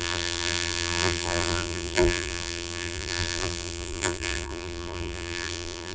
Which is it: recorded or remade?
remade